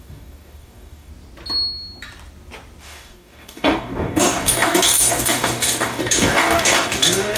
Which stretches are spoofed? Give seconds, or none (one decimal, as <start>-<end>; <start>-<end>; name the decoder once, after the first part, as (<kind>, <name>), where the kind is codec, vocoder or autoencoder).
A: 0.0-1.1 (codec, DAC); 2.8-7.4